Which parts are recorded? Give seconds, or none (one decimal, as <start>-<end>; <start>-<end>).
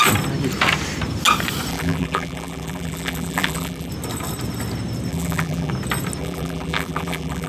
0.0-1.7; 3.9-5.1; 5.7-6.2